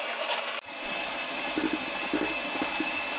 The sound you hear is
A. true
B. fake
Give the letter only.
A